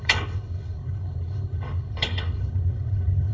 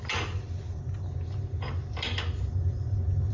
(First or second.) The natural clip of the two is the second